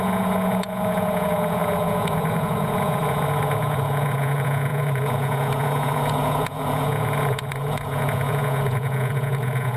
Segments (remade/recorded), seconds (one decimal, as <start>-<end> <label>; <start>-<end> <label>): 0.0-9.8 remade